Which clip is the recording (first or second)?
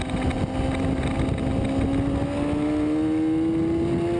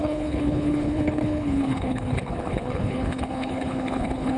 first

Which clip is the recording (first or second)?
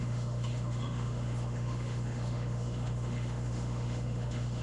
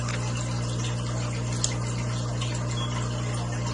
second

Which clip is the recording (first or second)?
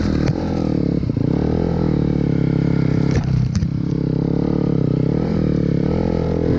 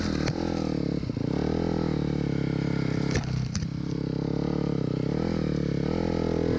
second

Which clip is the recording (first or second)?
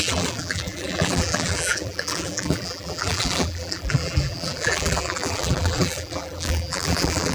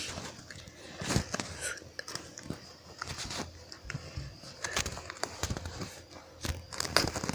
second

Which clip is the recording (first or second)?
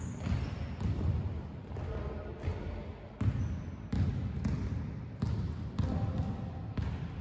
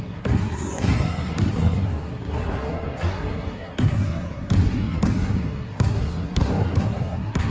first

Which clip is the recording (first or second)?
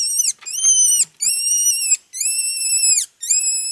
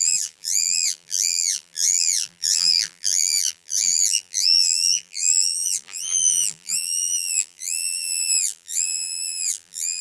first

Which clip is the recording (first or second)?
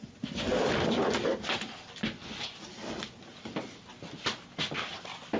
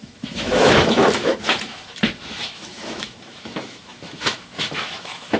first